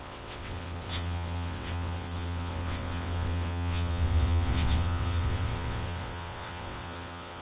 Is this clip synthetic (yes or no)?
yes